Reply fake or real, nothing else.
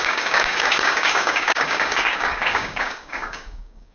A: fake